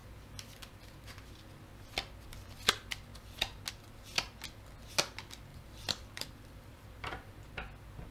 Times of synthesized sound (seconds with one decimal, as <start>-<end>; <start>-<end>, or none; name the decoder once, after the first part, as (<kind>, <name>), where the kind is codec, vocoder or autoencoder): 5.5-7.5 (vocoder, BigVGAN v2)